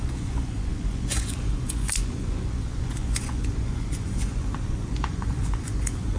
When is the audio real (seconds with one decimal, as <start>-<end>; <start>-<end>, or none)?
none